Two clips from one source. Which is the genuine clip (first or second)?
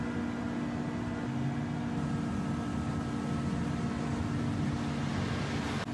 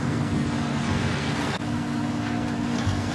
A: first